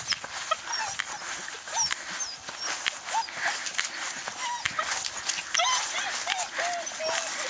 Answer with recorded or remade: recorded